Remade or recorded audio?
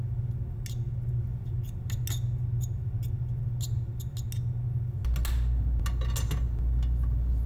recorded